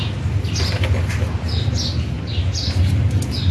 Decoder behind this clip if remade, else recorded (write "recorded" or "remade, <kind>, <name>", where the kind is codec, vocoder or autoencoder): recorded